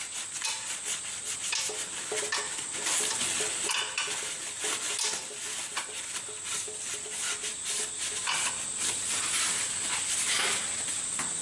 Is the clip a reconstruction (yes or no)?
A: no